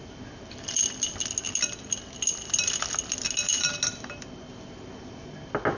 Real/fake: real